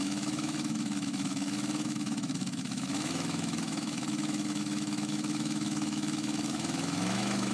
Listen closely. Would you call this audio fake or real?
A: fake